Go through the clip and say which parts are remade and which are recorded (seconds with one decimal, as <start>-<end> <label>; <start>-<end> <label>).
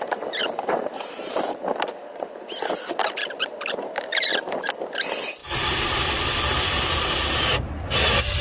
0.0-0.4 recorded; 0.4-1.7 remade; 1.7-3.2 recorded; 3.2-4.7 remade; 4.7-8.4 recorded